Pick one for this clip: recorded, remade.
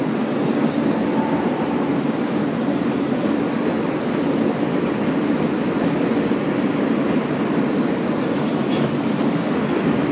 recorded